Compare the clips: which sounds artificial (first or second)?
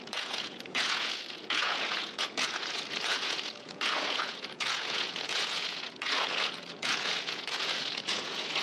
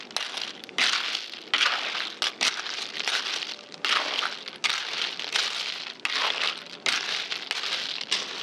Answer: first